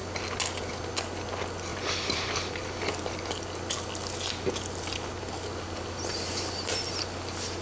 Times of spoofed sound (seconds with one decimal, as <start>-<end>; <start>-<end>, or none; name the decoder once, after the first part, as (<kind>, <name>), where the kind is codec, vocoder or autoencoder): 1.7-3.0 (vocoder, BigVGAN v2)